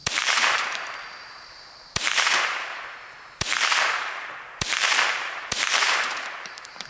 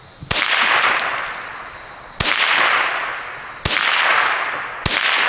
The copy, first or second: first